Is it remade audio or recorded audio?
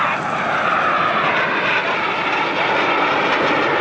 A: recorded